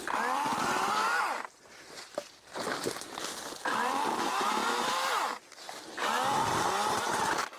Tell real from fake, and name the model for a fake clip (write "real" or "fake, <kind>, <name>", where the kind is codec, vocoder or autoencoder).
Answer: fake, vocoder, BigVGAN v2